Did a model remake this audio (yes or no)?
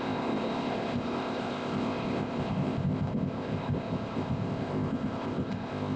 yes